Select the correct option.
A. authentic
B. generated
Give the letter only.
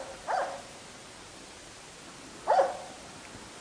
A